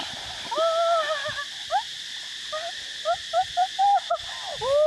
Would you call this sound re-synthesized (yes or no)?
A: no